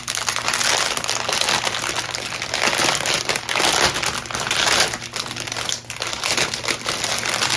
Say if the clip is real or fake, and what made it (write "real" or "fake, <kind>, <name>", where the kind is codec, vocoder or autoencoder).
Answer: real